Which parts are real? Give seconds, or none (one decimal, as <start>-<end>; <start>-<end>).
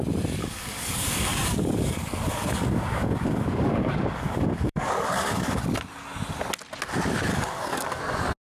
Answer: 0.0-0.4; 5.6-7.3; 8.0-8.6